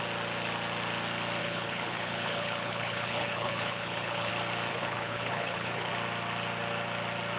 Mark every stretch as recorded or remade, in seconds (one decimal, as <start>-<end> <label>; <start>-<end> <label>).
0.0-1.4 recorded; 1.4-4.3 remade; 4.3-4.7 recorded; 4.7-5.9 remade; 5.9-7.4 recorded